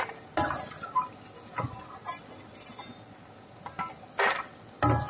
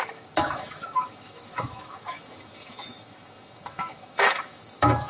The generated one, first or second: second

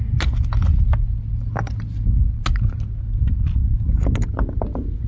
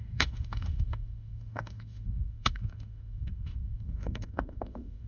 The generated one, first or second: second